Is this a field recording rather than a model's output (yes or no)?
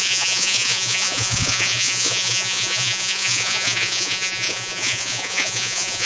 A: no